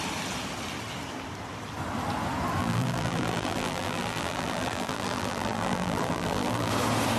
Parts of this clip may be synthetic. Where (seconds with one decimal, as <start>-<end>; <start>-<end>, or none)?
2.6-6.7